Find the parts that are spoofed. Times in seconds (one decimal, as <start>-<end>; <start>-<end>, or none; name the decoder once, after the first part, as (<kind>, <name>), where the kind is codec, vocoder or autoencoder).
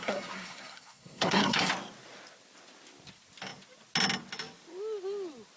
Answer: 0.0-1.7 (codec, SNAC)